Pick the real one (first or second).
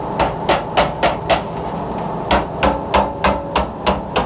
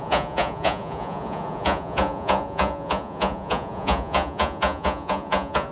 first